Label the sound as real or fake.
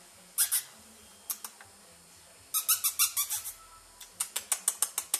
real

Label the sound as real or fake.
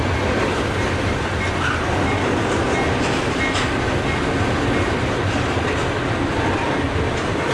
real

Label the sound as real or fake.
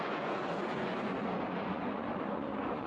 fake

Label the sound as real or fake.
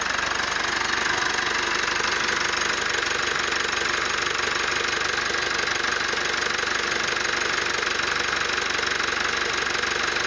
real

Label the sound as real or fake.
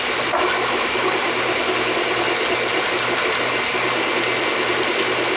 real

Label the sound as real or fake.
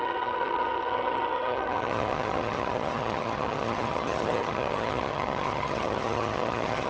fake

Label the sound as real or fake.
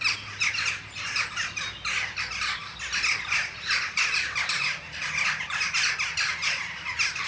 real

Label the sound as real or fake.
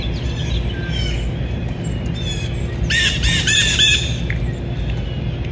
real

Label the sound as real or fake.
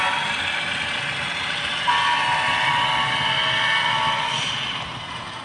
real